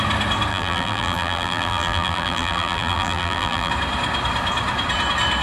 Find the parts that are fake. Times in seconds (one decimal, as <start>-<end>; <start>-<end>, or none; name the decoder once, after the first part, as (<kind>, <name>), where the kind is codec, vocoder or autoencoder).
0.5-3.7 (vocoder, BigVGAN v2)